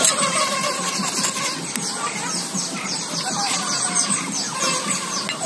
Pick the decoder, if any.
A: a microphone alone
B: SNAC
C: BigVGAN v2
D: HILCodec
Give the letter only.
A